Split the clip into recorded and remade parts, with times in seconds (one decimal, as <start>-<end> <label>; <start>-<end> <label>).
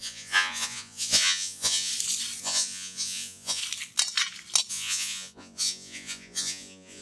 0.0-1.9 remade; 1.9-2.4 recorded; 2.4-3.6 remade; 3.6-4.7 recorded; 4.7-7.0 remade